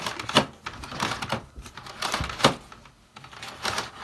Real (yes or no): yes